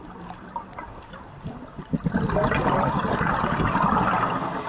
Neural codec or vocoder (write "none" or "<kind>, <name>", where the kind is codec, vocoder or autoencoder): none